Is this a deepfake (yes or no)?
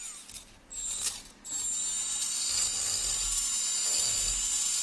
no